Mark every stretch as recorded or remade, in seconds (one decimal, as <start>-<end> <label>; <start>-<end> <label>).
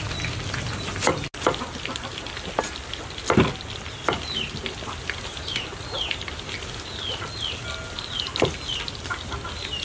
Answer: 0.0-9.8 recorded